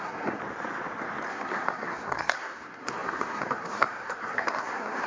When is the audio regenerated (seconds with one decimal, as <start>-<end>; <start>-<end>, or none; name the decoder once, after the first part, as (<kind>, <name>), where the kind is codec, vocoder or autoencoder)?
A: 0.0-0.4 (codec, SNAC); 1.3-5.1